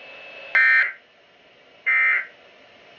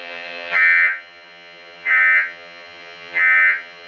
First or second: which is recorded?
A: first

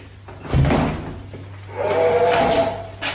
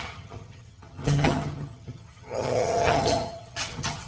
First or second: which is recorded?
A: first